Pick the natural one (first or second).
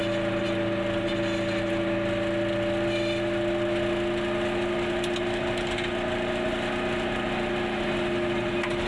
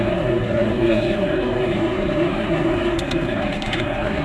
first